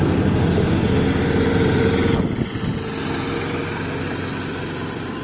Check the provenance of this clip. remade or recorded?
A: recorded